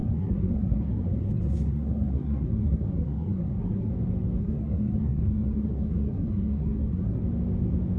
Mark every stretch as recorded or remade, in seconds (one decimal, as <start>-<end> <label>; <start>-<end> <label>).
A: 0.0-3.9 remade; 3.9-4.4 recorded; 4.4-7.2 remade; 7.2-8.0 recorded